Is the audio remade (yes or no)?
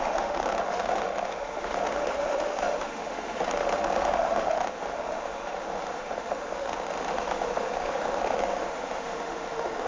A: yes